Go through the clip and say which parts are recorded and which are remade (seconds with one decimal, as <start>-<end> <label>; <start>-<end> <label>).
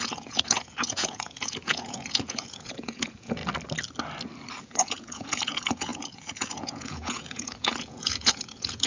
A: 0.0-3.4 remade; 3.4-4.6 recorded; 4.6-8.9 remade